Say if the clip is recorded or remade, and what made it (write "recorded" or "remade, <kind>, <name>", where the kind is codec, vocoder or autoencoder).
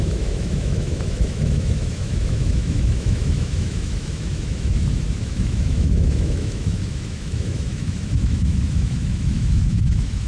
remade, autoencoder, DAC-VAE